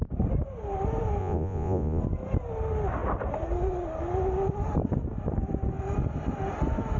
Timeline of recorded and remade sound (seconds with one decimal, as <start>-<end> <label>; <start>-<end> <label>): 0.0-1.2 recorded; 1.2-2.0 remade; 2.0-7.0 recorded

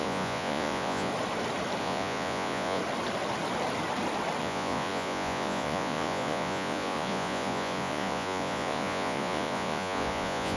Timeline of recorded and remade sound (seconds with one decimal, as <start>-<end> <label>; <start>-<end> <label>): 0.0-1.1 remade; 1.1-1.8 recorded; 1.8-2.8 remade; 2.8-4.4 recorded; 4.4-10.6 remade

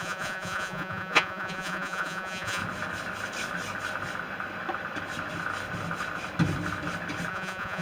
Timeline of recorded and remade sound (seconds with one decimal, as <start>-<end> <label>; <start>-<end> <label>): 0.0-2.6 remade; 2.6-7.3 recorded; 7.3-7.8 remade

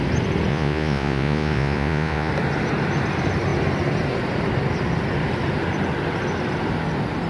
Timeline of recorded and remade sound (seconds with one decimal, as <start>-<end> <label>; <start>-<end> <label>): 0.0-0.5 recorded; 0.5-2.3 remade; 2.3-7.3 recorded